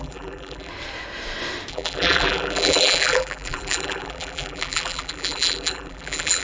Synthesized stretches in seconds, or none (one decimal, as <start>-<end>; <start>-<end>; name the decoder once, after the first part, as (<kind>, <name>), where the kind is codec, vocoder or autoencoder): 0.0-0.7 (vocoder, BigVGAN v2); 1.7-6.4